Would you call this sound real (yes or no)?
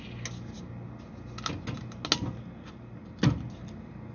yes